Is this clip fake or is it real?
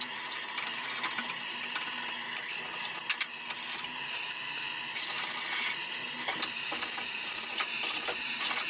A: real